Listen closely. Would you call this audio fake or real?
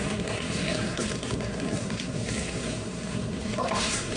fake